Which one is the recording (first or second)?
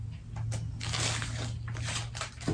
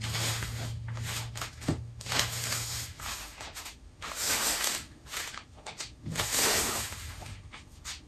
first